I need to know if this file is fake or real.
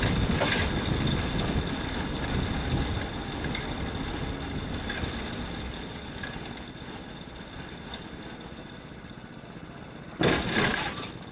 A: real